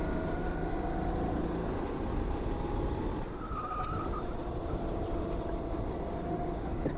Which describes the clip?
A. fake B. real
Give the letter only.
B